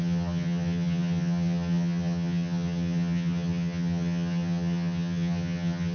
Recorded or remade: remade